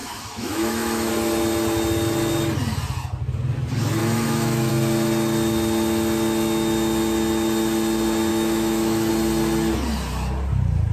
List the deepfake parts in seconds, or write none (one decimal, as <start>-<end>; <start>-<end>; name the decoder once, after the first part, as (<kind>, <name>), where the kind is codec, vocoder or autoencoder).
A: 0.0-1.1 (autoencoder, DAC-VAE); 4.0-4.7; 8.3-9.1